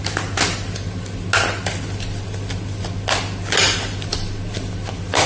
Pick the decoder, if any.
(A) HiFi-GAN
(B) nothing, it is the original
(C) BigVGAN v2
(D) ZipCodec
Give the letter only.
B